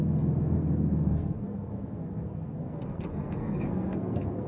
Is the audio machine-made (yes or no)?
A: yes